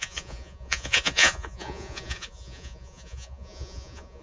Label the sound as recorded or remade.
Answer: remade